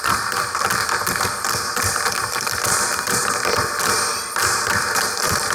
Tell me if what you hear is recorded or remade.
remade